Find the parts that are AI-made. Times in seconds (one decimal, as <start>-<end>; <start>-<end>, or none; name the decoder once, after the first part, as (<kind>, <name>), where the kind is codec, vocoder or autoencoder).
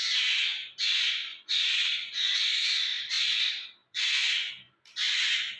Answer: 1.2-2.4 (vocoder, Vocos); 3.9-4.5